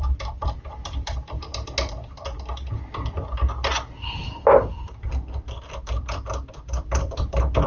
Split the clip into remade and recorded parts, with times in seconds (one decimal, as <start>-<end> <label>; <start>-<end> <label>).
0.0-1.5 remade; 1.5-5.7 recorded; 5.7-7.7 remade